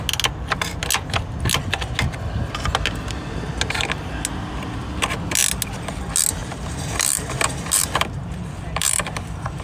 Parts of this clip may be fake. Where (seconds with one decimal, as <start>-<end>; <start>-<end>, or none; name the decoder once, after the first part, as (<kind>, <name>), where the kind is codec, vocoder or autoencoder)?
6.4-9.6 (vocoder, BigVGAN v2)